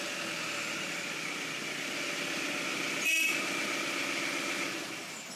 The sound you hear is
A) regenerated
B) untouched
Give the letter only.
B